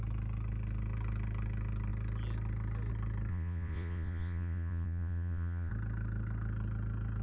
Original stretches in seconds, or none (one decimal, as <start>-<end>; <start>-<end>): 0.0-3.3; 5.7-7.2